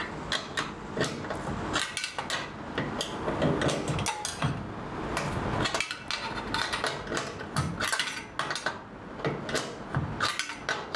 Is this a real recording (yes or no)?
yes